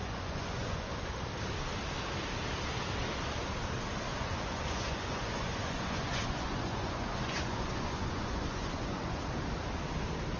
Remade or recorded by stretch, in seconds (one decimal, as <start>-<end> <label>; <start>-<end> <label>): 0.0-0.9 remade; 0.9-4.1 recorded; 4.1-9.2 remade; 9.2-10.4 recorded